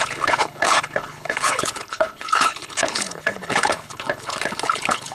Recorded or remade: remade